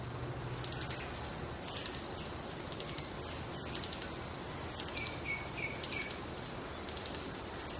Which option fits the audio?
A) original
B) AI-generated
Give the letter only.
A